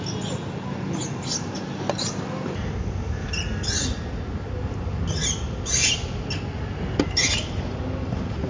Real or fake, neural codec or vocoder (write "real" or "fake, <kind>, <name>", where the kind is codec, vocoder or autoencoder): real